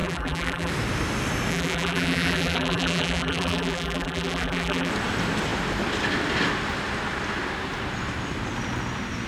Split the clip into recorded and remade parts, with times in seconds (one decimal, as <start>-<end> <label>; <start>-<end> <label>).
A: 0.0-0.7 remade; 0.7-1.5 recorded; 1.5-4.9 remade; 4.9-9.3 recorded